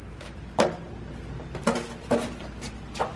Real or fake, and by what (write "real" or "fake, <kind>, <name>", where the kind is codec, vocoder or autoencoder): real